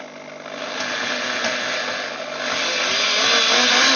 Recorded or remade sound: recorded